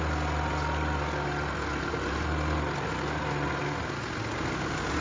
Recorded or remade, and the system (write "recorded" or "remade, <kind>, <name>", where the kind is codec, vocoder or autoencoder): recorded